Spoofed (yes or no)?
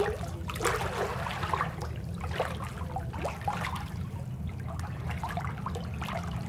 no